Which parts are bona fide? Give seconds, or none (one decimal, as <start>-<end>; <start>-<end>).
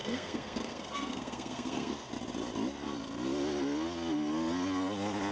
2.1-5.3